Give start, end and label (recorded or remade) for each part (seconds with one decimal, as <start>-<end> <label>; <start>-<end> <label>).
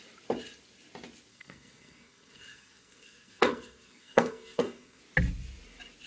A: 0.0-1.3 recorded; 1.3-5.0 remade; 5.0-6.1 recorded